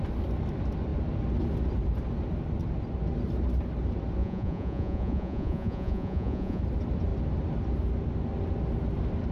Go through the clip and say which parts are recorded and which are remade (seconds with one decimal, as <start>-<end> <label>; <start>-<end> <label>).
0.0-4.2 recorded; 4.2-6.6 remade; 6.6-9.3 recorded